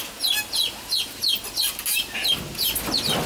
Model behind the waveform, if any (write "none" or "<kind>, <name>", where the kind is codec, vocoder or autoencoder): none